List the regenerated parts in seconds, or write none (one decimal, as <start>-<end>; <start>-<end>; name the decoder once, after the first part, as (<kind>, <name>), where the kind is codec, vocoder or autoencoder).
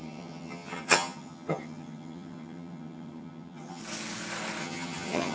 0.0-3.8 (vocoder, HiFi-GAN); 4.6-5.3